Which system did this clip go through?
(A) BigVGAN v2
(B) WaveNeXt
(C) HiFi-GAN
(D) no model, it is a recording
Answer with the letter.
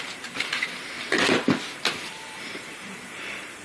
A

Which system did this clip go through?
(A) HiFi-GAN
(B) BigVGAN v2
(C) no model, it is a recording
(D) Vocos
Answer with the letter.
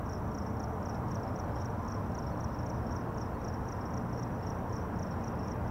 C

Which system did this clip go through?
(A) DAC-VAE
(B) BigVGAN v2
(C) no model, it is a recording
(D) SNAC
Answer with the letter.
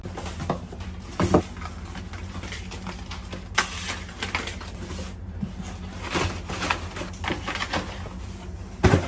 C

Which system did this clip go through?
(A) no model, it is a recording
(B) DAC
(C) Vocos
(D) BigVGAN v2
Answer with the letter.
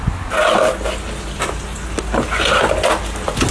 A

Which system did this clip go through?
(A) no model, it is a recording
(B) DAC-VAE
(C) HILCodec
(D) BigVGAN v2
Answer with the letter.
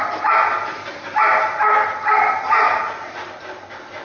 A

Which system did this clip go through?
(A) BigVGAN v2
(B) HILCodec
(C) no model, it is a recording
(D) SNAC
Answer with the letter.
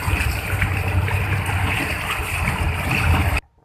C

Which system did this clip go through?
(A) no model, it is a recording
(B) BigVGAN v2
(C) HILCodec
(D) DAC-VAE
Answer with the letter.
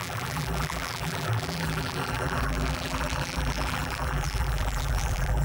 B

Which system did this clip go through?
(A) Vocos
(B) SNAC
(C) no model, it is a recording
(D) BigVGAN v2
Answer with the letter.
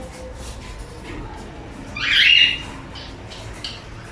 C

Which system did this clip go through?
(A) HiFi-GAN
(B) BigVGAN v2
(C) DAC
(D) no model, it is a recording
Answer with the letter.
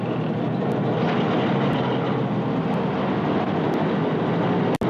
D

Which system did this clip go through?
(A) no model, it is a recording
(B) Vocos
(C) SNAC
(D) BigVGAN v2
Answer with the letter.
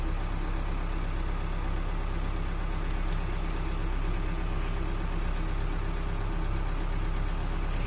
A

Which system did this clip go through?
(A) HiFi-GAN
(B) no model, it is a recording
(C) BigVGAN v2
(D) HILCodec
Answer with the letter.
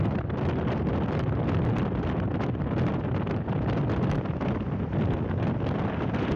B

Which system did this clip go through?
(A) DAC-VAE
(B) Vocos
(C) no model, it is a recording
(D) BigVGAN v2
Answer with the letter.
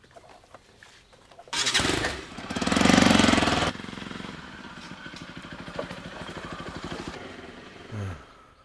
D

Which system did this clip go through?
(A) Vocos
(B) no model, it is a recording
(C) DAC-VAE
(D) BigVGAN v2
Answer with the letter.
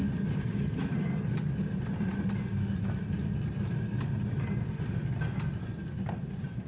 B